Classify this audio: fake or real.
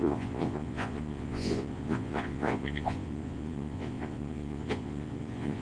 fake